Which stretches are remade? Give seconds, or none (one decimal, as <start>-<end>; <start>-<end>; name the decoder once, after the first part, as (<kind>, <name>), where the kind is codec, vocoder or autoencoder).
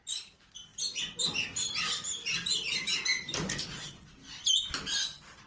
3.1-4.5 (vocoder, BigVGAN v2)